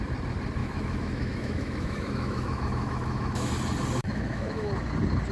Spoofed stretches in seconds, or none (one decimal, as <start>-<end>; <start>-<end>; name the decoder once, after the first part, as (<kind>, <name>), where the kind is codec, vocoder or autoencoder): 0.6-3.5 (autoencoder, DAC-VAE); 4.0-4.7